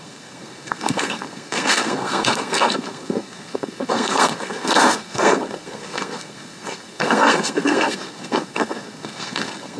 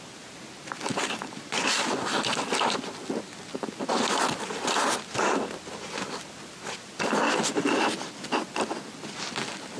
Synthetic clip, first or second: first